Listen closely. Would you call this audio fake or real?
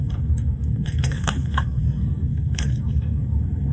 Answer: fake